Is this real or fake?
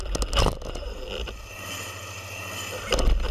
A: real